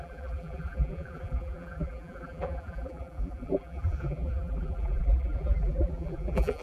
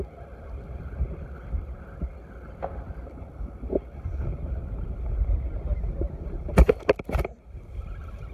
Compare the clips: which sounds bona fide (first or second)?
second